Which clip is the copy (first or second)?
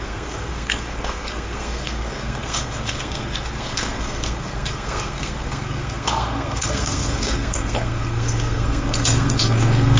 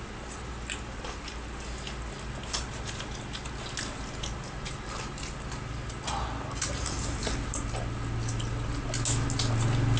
first